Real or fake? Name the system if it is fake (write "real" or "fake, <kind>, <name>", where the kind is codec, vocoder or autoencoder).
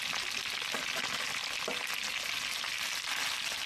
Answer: real